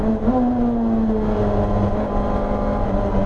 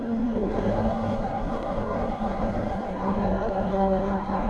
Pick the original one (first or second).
first